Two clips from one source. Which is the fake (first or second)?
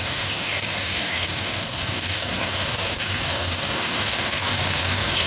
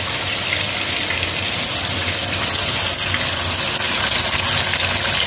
first